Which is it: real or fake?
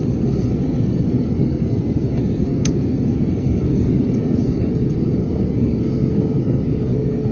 fake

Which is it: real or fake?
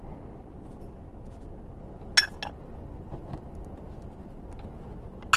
real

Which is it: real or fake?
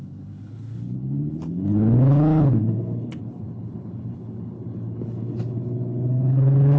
fake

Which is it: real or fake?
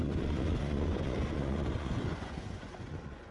fake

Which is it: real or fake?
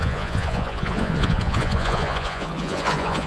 fake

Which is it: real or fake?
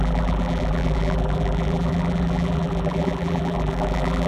fake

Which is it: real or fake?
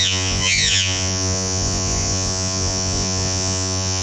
fake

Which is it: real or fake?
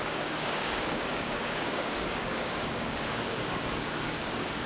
fake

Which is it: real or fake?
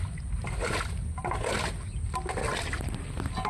real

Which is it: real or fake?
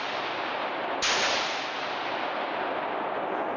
real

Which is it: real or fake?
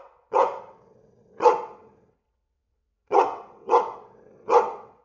fake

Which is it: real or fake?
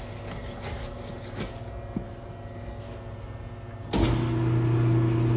real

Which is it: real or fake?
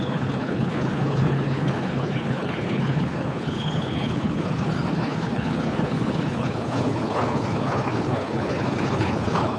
fake